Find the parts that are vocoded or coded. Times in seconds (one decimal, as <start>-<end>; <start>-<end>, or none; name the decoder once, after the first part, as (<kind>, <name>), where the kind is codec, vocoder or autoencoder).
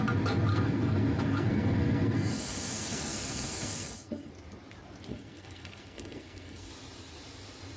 0.5-4.3 (codec, SNAC); 5.1-6.7